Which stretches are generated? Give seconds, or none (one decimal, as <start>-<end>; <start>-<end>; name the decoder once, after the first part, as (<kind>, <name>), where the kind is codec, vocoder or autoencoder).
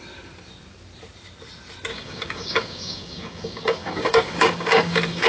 1.9-5.3 (codec, DAC)